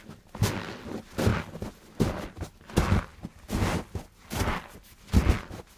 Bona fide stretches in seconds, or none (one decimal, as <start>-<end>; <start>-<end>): 0.0-5.8